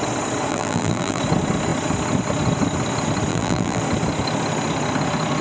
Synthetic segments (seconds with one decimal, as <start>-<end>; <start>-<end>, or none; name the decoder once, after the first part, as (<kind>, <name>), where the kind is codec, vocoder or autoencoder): 0.5-1.2 (vocoder, BigVGAN v2); 3.3-3.8